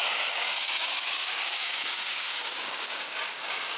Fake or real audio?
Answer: fake